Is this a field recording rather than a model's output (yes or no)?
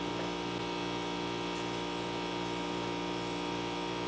yes